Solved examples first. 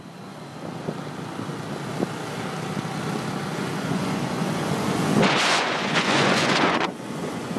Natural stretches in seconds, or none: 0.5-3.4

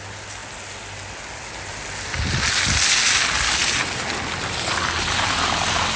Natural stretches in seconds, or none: 0.0-6.0

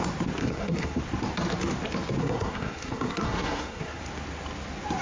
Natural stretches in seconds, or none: 0.0-0.4; 1.0-2.2; 4.0-5.0